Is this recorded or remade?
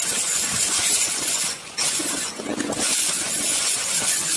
remade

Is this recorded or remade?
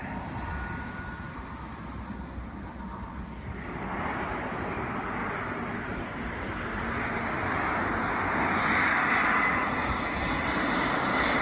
recorded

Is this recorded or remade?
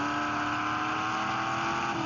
recorded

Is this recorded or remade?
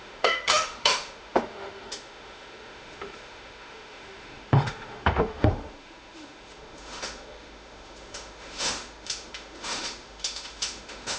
remade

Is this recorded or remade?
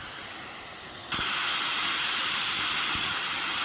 recorded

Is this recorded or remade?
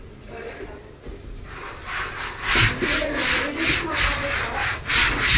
recorded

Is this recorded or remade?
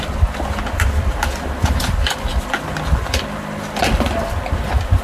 recorded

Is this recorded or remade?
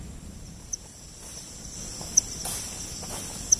recorded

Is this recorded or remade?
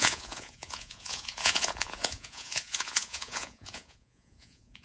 remade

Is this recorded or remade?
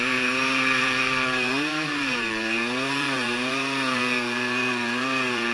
remade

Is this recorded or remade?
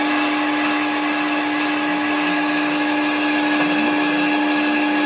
recorded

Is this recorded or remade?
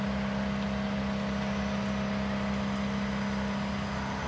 recorded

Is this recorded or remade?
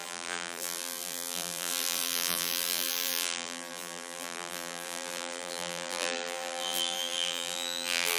remade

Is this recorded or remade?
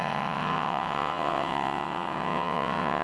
remade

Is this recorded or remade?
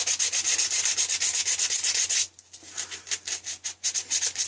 recorded